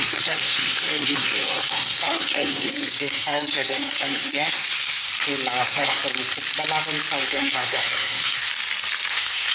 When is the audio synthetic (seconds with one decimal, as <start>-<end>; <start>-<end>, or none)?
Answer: 0.0-5.1; 5.6-6.0; 7.2-8.5; 9.1-9.5

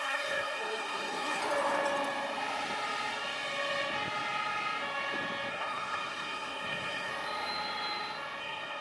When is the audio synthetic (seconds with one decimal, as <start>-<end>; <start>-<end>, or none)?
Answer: 0.0-1.4; 5.5-7.1; 8.4-8.8

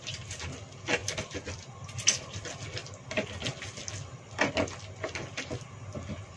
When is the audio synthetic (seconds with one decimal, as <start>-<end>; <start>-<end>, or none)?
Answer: none

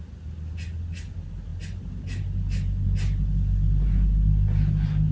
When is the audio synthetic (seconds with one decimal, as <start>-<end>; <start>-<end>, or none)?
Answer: none

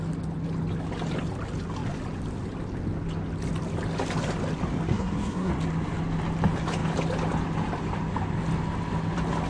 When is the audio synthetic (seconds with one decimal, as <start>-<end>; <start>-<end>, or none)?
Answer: 4.9-5.5